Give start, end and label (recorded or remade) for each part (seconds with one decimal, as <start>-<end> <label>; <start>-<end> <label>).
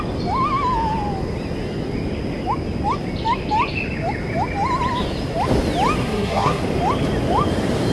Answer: 0.0-6.0 recorded; 6.0-6.6 remade; 6.6-7.9 recorded